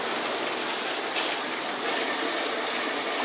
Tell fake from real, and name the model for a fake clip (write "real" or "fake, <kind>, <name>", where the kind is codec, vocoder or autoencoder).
real